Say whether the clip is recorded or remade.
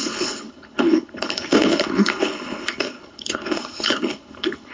remade